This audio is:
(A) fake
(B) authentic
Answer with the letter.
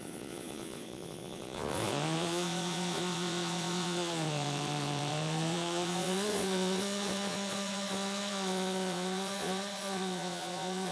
A